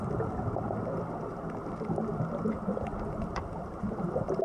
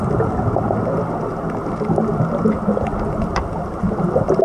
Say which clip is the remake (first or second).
first